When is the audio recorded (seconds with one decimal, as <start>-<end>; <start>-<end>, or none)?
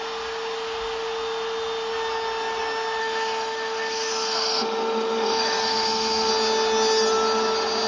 0.0-3.0; 6.3-7.9